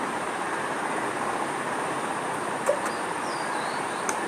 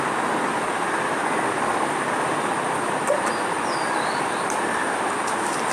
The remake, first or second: first